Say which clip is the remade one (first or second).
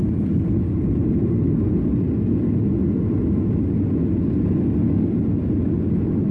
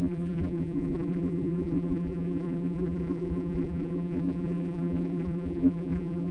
second